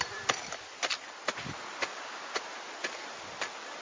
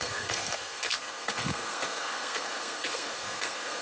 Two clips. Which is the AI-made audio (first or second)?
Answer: second